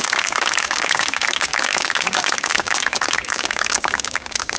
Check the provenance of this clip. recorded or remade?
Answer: remade